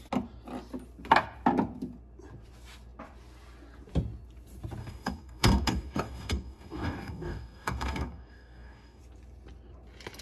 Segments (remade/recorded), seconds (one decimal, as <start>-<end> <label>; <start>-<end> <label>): 0.0-4.8 recorded; 4.8-9.0 remade; 9.0-10.2 recorded